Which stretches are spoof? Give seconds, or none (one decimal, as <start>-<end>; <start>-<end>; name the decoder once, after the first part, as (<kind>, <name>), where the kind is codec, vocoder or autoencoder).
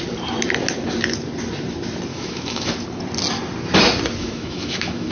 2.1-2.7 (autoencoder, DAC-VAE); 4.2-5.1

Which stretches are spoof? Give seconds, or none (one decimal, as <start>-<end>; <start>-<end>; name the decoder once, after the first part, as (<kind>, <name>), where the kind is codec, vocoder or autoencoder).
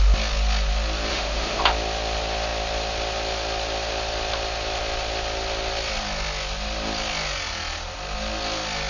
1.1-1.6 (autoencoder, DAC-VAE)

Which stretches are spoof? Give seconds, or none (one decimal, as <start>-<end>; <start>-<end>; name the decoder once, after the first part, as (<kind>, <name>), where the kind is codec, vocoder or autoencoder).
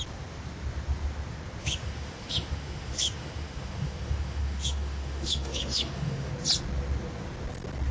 1.6-6.3 (autoencoder, DAC-VAE)